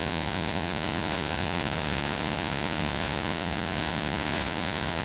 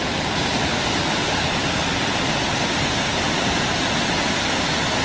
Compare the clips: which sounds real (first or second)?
second